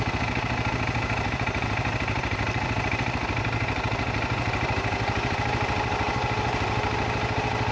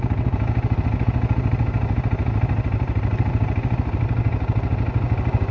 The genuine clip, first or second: second